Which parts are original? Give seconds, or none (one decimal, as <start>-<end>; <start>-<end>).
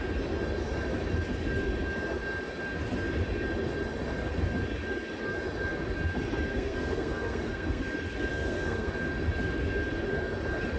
0.0-6.5; 7.8-8.3; 8.9-10.8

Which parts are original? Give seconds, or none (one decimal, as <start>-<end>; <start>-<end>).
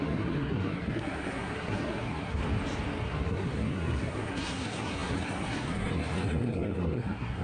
2.4-3.0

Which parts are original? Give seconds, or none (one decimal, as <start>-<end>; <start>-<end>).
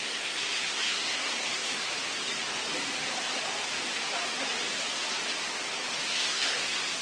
1.9-6.1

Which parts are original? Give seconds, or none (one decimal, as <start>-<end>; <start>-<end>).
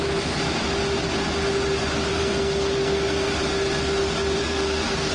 0.0-2.1; 3.3-4.4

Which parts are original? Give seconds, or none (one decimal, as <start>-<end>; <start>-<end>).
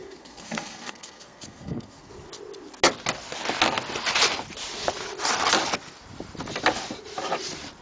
2.1-7.8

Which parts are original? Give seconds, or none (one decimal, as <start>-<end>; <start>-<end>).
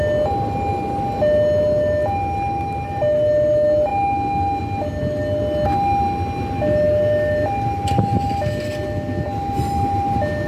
0.0-10.5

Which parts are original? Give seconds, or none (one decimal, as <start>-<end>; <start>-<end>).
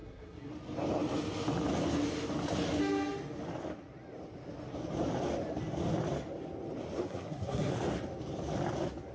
0.5-7.0; 7.7-9.1